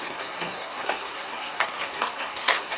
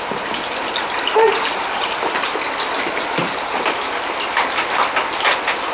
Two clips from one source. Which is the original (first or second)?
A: second